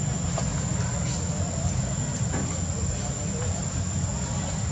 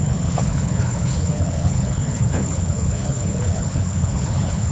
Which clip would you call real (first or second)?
first